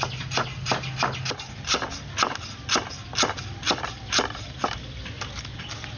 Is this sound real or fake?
real